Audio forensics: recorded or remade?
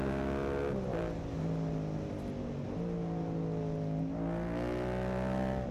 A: recorded